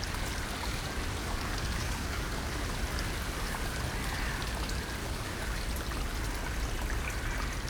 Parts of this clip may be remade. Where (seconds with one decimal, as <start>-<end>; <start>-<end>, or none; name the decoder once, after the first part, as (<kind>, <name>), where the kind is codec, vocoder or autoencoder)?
1.2-2.6 (codec, DAC); 5.0-5.6